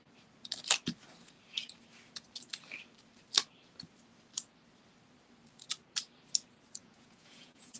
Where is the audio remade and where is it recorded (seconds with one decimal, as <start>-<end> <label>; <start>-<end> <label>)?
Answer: 0.0-6.8 recorded; 6.8-7.8 remade